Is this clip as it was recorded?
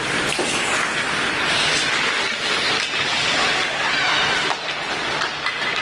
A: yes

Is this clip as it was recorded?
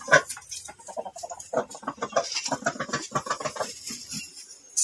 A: yes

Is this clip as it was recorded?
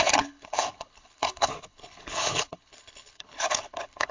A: no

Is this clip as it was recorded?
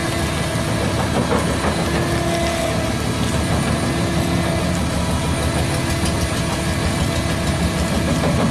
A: yes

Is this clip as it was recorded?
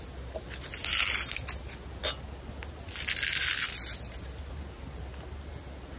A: yes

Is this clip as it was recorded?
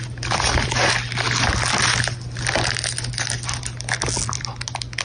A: yes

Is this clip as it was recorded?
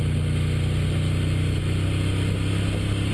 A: yes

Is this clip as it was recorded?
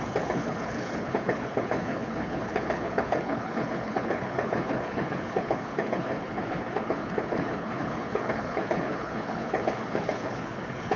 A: no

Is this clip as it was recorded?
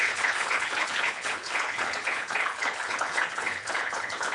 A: no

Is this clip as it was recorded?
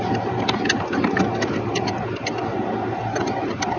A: yes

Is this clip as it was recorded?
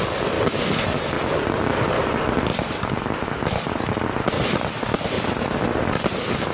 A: yes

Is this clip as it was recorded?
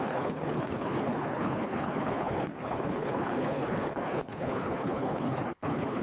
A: no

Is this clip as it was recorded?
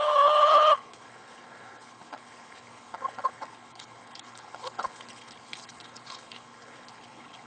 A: no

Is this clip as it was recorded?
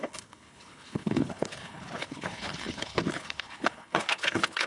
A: no